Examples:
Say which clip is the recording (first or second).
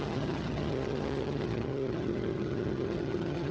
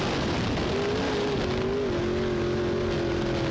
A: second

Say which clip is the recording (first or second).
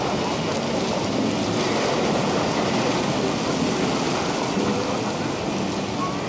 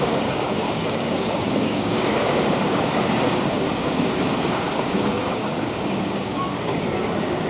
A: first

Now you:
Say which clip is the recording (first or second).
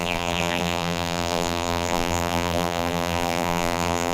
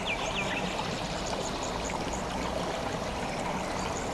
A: second